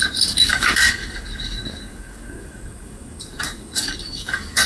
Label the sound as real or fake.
fake